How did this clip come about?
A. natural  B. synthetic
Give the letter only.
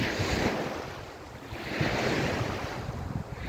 A